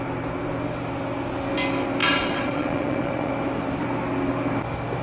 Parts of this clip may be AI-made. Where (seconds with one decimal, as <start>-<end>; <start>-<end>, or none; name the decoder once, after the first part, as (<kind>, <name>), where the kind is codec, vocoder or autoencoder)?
2.0-3.3 (vocoder, Vocos)